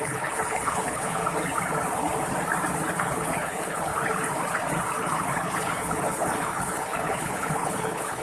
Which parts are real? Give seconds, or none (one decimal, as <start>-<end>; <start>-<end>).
1.2-2.9; 3.9-5.0

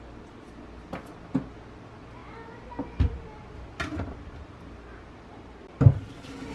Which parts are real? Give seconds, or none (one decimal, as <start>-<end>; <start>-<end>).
0.0-6.5

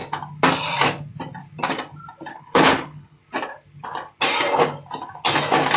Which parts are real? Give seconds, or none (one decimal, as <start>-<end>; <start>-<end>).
0.0-2.3; 3.2-5.8